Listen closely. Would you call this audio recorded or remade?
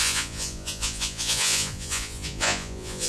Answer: remade